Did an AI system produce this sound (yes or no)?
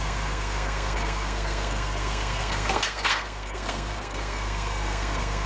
yes